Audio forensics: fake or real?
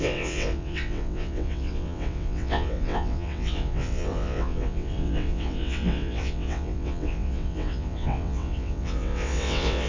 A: fake